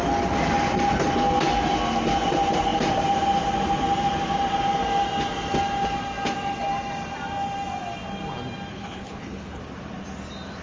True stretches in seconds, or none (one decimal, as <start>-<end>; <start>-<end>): 0.0-8.7; 9.6-10.6